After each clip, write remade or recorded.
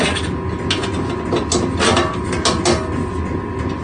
recorded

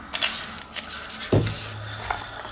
recorded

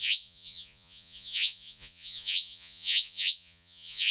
remade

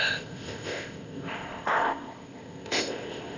remade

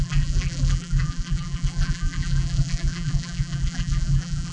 remade